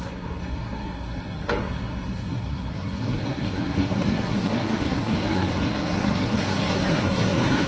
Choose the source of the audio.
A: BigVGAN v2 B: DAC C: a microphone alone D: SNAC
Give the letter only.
D